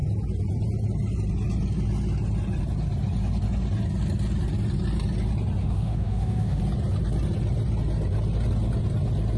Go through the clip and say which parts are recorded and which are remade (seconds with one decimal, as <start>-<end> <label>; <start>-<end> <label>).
0.0-5.6 recorded; 5.6-6.6 remade; 6.6-9.4 recorded